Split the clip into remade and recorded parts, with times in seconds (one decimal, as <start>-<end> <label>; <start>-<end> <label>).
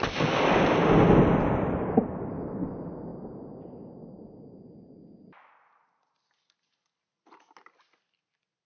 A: 0.0-8.6 recorded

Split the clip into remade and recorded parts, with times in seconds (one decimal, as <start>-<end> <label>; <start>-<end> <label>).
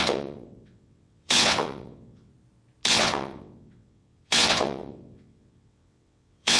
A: 0.0-2.3 remade; 2.3-2.9 recorded; 2.9-6.6 remade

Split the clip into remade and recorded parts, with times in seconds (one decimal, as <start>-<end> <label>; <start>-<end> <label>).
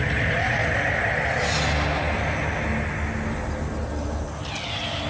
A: 0.0-5.1 recorded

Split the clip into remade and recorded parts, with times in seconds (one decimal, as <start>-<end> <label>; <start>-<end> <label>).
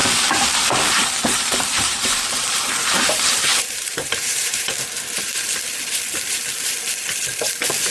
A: 0.0-4.7 remade; 4.7-7.9 recorded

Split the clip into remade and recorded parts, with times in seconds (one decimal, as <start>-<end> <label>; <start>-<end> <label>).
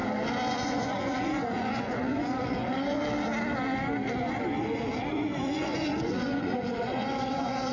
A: 0.0-0.5 recorded; 0.5-3.0 remade; 3.0-5.1 recorded; 5.1-7.7 remade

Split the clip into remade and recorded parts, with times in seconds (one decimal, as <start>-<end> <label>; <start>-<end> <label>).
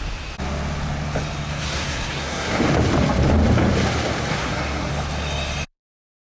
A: 0.0-1.5 recorded; 1.5-2.6 remade; 2.6-4.3 recorded; 4.3-4.9 remade; 4.9-6.3 recorded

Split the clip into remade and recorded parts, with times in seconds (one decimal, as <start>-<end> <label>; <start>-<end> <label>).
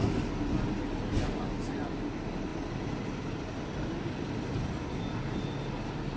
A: 0.0-6.2 recorded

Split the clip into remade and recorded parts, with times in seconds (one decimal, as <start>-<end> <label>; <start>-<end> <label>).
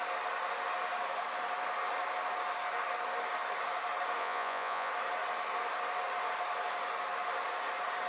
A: 0.0-4.2 recorded; 4.2-4.9 remade; 4.9-8.1 recorded